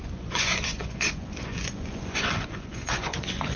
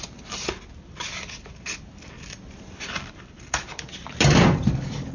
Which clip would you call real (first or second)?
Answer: second